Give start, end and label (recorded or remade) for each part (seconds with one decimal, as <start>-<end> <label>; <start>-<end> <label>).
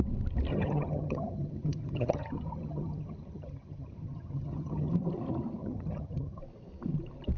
0.0-0.5 recorded; 0.5-4.9 remade; 4.9-5.6 recorded; 5.6-6.4 remade; 6.4-7.4 recorded